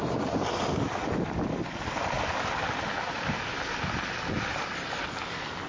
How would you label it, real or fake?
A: real